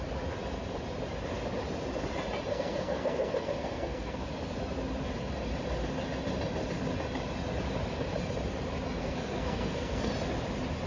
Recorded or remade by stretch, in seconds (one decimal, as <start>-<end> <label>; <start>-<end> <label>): 0.0-2.5 recorded; 2.5-4.2 remade; 4.2-9.0 recorded; 9.0-10.1 remade; 10.1-10.9 recorded

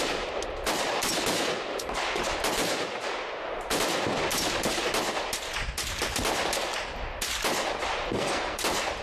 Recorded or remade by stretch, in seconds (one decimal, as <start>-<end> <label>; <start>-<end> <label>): 0.0-8.1 recorded; 8.1-8.6 remade; 8.6-9.0 recorded